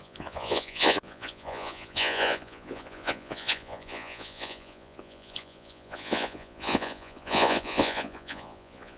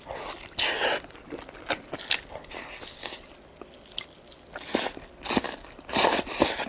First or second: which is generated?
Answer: first